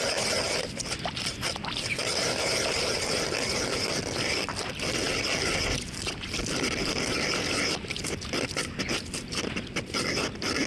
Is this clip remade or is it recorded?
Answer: recorded